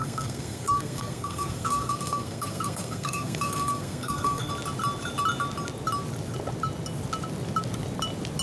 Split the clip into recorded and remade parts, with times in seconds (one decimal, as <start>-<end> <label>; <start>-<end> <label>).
0.0-4.5 remade; 4.5-8.4 recorded